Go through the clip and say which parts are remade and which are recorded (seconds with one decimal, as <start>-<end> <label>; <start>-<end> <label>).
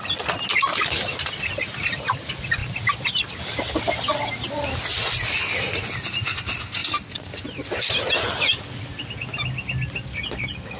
0.0-10.8 recorded